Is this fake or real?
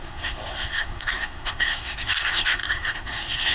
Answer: fake